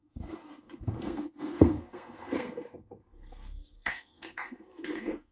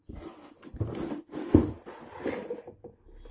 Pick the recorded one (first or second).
second